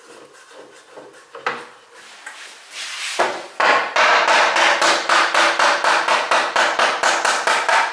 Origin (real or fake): real